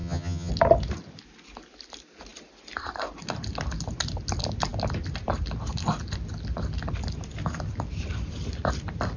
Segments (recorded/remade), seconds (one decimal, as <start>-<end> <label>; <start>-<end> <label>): 0.0-0.5 remade; 0.5-9.2 recorded